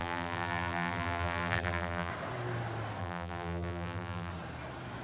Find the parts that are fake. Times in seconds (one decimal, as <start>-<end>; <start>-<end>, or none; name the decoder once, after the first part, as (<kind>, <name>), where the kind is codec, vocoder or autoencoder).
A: 0.0-2.1 (vocoder, BigVGAN v2); 3.0-4.3